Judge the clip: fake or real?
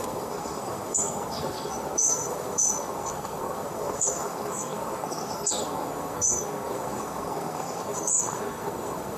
fake